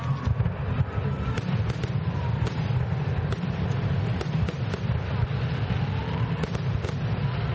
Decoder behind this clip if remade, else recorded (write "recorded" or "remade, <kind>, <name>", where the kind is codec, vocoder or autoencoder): recorded